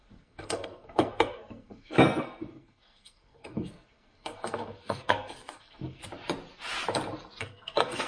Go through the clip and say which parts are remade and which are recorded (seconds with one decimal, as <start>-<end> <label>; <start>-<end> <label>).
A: 0.0-6.0 remade; 6.0-7.4 recorded; 7.4-8.1 remade